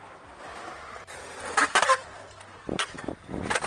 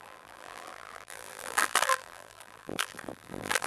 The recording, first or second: first